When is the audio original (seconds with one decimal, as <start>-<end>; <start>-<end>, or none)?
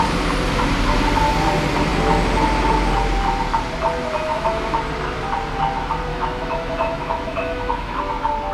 0.0-4.3; 4.8-6.1; 8.0-8.5